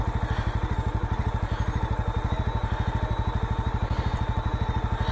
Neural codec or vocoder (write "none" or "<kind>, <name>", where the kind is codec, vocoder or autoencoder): none